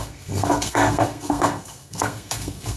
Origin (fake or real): fake